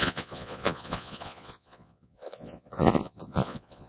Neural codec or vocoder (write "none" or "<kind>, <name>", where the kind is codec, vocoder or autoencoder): vocoder, Vocos